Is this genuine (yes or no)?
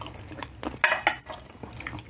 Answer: yes